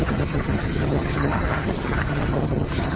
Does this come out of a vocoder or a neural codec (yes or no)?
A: yes